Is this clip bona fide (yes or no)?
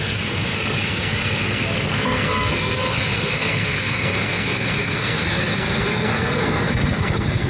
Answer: no